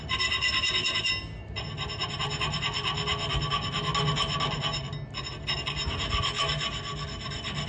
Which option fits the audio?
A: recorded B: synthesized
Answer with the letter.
A